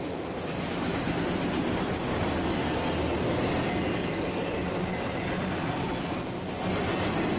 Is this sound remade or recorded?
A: recorded